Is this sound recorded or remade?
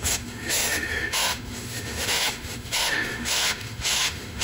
remade